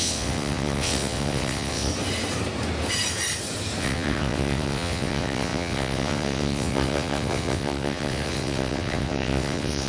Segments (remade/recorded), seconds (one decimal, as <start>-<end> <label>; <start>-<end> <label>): 0.0-1.9 remade; 1.9-3.8 recorded; 3.8-9.9 remade